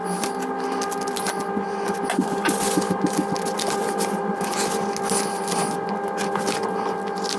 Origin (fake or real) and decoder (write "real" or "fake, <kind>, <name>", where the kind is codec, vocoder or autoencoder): real